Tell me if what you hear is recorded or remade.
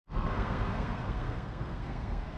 remade